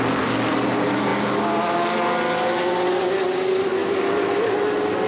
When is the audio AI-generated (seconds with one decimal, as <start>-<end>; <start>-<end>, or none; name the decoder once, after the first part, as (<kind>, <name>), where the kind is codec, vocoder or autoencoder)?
none